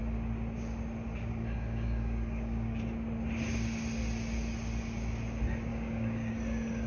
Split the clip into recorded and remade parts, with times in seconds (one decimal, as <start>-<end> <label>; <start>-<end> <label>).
0.0-1.3 recorded; 1.3-2.8 remade; 2.8-5.7 recorded; 5.7-6.3 remade; 6.3-6.9 recorded